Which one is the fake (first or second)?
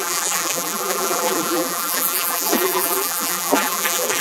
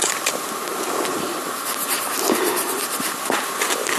first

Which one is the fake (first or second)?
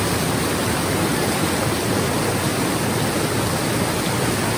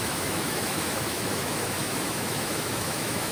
second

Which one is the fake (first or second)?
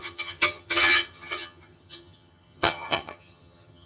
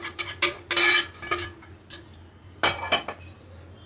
first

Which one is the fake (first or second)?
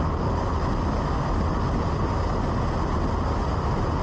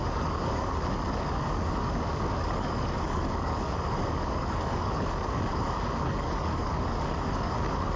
second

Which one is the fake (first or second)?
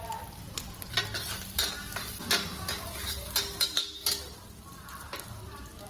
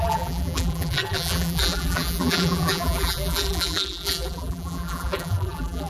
second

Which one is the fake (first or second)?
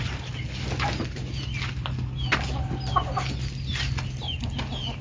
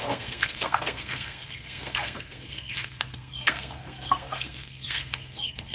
second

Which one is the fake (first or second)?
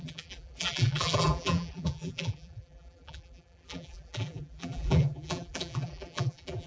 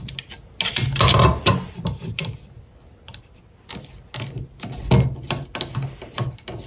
first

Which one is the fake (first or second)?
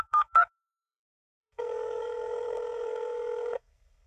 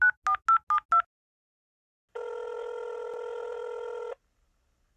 first